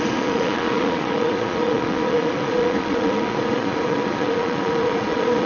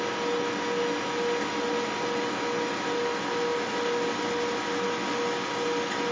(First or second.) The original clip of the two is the second